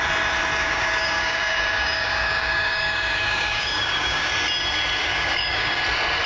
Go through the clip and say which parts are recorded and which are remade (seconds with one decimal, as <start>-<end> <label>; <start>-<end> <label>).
0.0-0.6 recorded; 0.6-4.3 remade; 4.3-5.0 recorded; 5.0-5.8 remade; 5.8-6.3 recorded

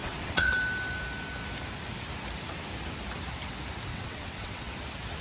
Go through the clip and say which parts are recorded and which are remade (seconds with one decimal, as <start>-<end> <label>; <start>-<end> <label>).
0.0-0.5 remade; 0.5-3.9 recorded; 3.9-4.7 remade; 4.7-5.2 recorded

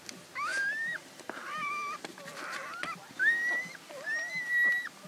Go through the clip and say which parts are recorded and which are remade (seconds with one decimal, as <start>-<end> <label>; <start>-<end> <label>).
0.0-0.5 recorded; 0.5-1.7 remade; 1.7-5.1 recorded

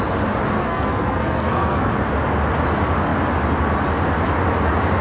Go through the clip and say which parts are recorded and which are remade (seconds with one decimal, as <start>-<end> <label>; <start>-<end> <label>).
0.0-0.6 recorded; 0.6-1.9 remade; 1.9-5.0 recorded

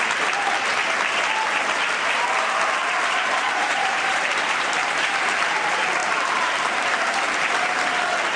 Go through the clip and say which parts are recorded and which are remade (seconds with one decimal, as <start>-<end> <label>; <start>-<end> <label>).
0.0-3.2 recorded; 3.2-5.5 remade; 5.5-8.4 recorded